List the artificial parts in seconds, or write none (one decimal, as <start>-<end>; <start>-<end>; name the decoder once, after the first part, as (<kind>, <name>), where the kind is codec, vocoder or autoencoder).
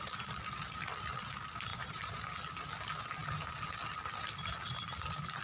1.7-2.3 (vocoder, BigVGAN v2)